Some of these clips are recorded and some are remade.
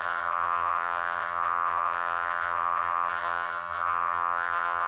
remade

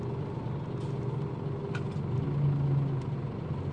recorded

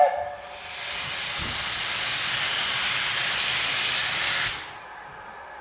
recorded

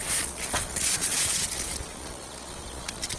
remade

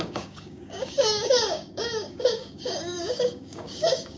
remade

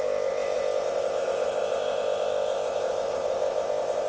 remade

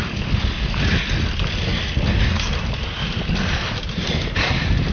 recorded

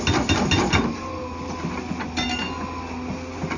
recorded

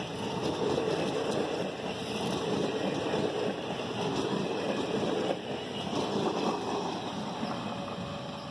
recorded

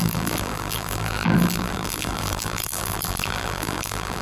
remade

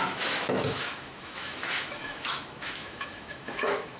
remade